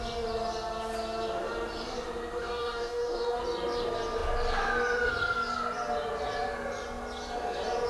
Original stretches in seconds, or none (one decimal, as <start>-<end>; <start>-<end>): 0.0-2.4; 3.4-7.9